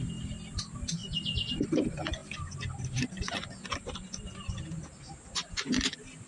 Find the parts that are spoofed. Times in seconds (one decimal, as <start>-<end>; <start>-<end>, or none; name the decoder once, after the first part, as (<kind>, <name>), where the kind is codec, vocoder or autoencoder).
none